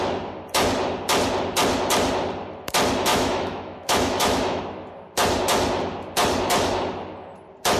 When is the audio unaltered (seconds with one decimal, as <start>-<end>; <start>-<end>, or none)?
0.0-3.1; 4.6-7.8

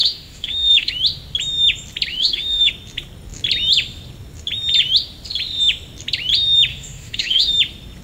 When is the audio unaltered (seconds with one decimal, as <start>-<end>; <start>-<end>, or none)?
0.9-2.1; 2.7-6.7; 7.5-8.0

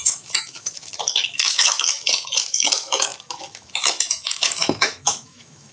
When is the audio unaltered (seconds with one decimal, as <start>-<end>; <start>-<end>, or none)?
none

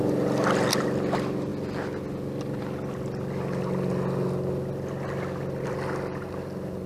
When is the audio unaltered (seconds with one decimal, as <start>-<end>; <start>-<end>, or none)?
0.0-6.9

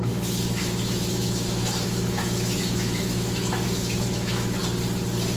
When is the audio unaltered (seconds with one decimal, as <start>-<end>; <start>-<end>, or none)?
4.6-5.4

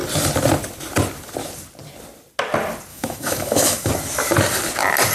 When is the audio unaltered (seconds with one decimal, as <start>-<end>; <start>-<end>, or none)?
0.0-2.9; 3.9-5.1

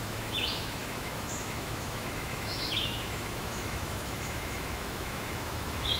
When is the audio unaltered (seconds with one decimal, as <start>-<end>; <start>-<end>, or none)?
none